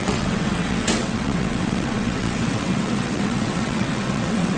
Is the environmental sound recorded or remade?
remade